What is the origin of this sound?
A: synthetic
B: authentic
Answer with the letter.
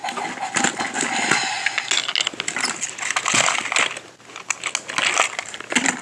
B